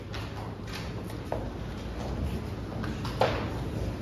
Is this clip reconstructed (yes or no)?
no